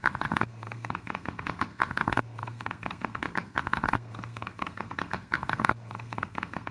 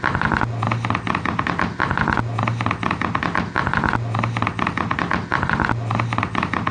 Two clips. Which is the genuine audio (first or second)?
second